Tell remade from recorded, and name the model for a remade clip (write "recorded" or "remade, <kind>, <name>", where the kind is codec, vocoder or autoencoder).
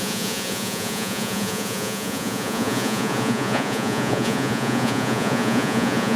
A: remade, vocoder, Vocos